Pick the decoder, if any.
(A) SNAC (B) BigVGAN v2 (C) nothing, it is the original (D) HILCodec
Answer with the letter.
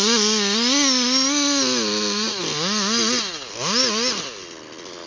C